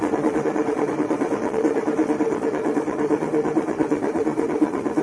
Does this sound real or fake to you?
fake